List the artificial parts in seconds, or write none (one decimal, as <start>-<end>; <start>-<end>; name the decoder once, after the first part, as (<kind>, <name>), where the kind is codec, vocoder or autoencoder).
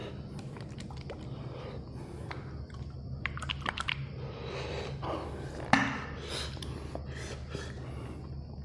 none